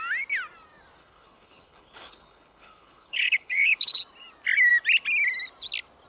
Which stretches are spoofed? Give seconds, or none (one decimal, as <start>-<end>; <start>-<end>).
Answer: 1.0-4.0